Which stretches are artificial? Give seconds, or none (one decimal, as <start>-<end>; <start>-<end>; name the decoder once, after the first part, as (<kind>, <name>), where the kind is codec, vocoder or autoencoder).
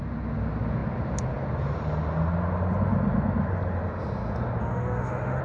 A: 4.6-5.4 (autoencoder, DAC-VAE)